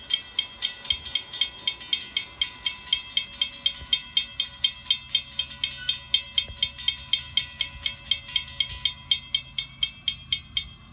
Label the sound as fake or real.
real